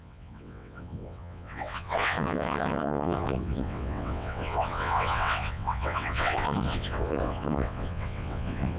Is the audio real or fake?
fake